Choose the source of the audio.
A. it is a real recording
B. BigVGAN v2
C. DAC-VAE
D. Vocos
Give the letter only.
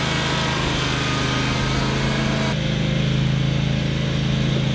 A